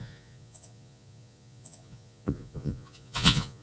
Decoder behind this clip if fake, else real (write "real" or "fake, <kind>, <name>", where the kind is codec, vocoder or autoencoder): fake, vocoder, Vocos